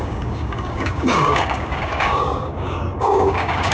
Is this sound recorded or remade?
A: remade